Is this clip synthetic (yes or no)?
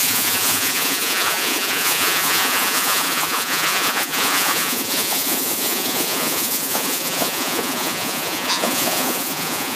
yes